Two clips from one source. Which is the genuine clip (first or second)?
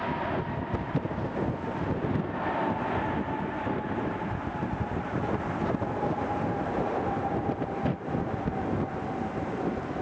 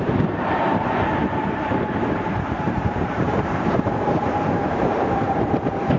first